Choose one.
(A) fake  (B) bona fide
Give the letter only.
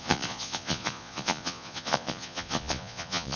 A